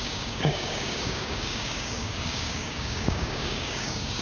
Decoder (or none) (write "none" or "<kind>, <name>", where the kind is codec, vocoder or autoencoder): codec, DAC